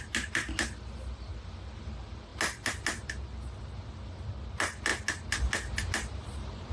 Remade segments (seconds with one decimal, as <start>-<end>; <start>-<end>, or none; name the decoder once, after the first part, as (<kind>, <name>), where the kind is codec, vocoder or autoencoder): none